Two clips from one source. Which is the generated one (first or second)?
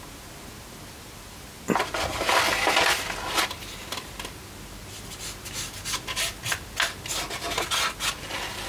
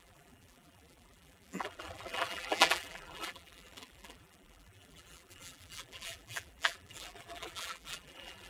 second